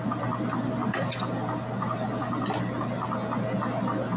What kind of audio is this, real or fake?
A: real